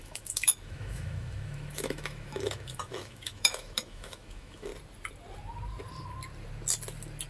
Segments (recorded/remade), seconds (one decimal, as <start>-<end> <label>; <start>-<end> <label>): 0.0-4.7 remade; 4.7-7.3 recorded